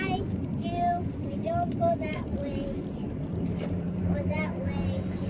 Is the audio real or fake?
fake